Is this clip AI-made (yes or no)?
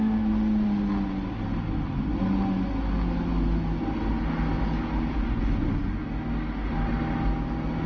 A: no